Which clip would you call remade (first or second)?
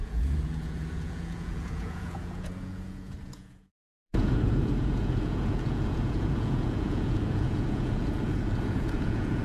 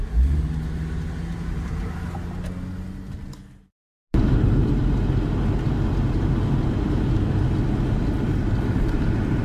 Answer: first